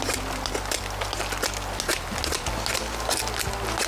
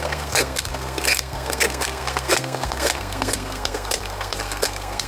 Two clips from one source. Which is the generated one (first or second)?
second